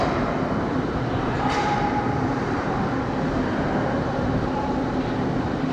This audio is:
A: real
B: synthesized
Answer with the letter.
B